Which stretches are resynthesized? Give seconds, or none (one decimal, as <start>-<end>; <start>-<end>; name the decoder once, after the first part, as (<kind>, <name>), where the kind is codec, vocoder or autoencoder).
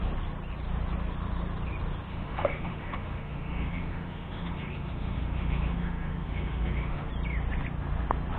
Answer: 2.1-7.1 (autoencoder, DAC-VAE)